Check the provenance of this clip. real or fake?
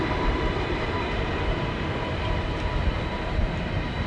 fake